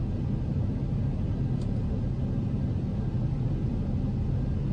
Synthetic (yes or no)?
no